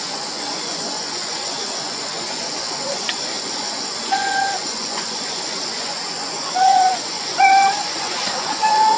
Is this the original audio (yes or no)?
no